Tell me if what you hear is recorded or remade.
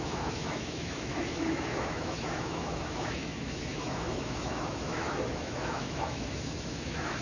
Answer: remade